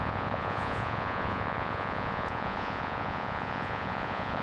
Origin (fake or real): fake